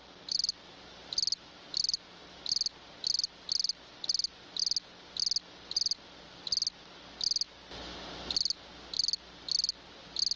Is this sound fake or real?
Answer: real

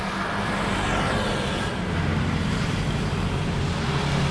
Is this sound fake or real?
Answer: fake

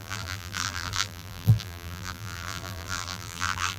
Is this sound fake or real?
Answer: fake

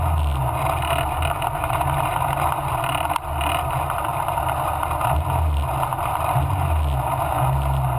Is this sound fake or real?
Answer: real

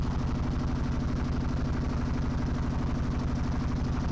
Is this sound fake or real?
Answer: real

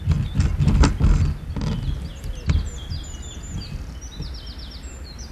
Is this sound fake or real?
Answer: real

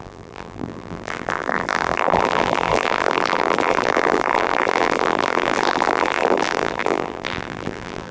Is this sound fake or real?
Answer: fake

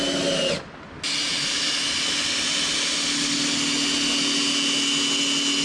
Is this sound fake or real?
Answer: real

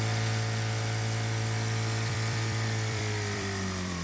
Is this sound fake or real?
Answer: fake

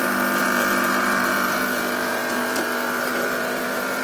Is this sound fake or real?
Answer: fake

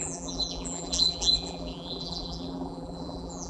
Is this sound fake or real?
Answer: fake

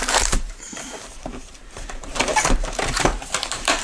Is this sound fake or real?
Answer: fake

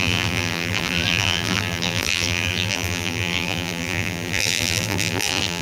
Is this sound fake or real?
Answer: fake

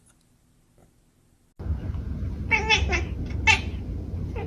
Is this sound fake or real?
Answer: real